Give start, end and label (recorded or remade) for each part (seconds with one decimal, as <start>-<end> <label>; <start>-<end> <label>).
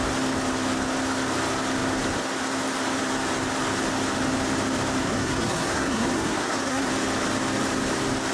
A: 0.0-5.0 recorded; 5.0-6.9 remade; 6.9-8.3 recorded